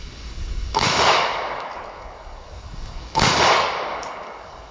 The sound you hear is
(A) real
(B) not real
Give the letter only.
B